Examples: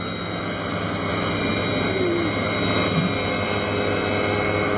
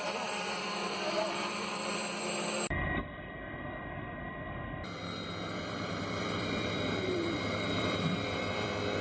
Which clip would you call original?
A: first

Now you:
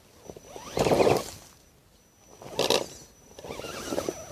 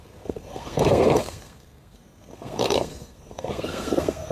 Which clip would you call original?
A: first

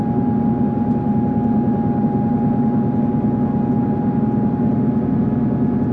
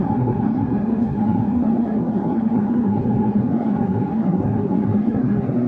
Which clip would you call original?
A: first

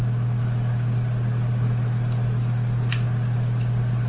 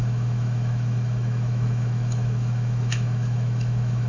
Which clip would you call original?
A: first